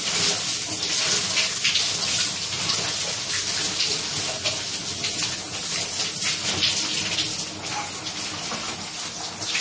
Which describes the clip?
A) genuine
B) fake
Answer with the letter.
A